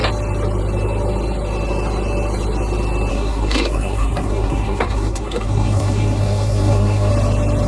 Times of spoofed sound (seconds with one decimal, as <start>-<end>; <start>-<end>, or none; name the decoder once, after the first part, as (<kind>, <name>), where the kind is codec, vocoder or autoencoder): 3.1-7.1 (codec, SNAC)